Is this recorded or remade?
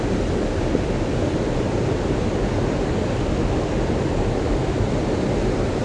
recorded